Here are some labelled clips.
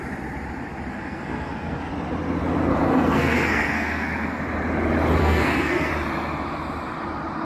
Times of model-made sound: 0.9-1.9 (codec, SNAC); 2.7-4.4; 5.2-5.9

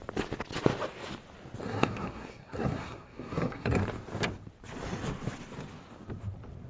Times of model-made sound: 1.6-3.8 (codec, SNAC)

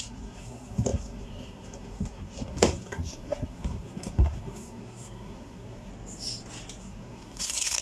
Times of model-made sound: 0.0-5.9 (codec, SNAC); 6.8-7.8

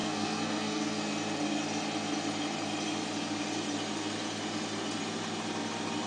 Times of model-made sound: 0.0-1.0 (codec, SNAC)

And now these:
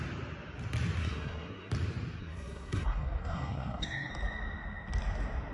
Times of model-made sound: 1.0-1.7 (codec, SNAC); 2.2-4.1

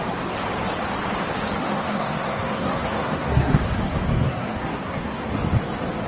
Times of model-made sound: 1.6-5.3 (codec, SNAC)

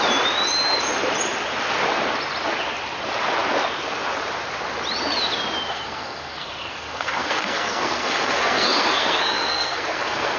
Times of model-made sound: 5.7-10.4 (codec, SNAC)

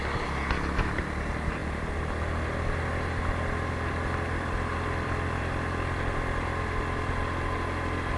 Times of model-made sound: none